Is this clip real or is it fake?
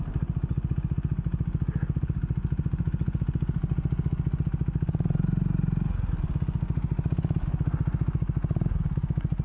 real